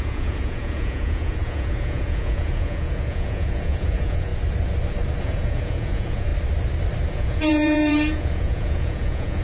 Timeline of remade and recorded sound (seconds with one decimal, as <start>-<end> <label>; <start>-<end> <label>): 0.0-4.3 remade; 4.3-5.2 recorded; 5.2-6.3 remade; 6.3-7.1 recorded; 7.1-9.4 remade